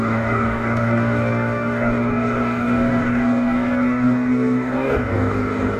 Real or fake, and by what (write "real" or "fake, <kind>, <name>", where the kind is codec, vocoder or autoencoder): fake, codec, DAC